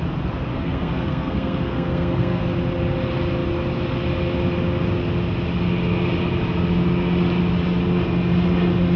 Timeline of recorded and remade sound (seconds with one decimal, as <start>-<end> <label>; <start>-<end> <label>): 0.0-0.5 recorded; 0.5-2.4 remade; 2.4-9.0 recorded